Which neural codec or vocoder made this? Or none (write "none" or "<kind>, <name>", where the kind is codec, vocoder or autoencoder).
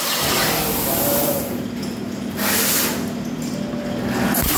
none